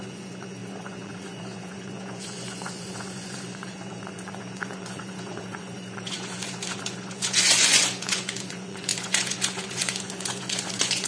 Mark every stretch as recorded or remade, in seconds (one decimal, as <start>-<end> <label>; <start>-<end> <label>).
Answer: 0.0-11.1 remade